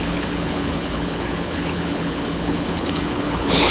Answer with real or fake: fake